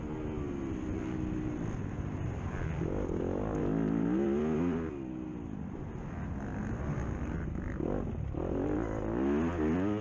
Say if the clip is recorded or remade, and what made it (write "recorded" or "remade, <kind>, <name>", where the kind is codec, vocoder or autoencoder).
recorded